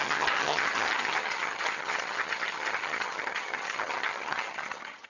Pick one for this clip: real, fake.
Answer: fake